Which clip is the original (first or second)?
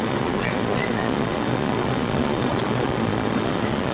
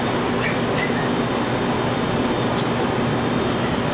second